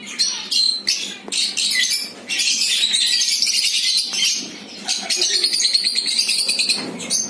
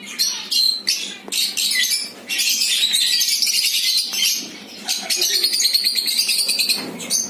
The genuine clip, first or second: second